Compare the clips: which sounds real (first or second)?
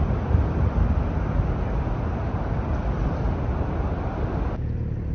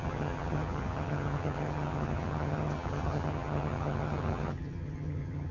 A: first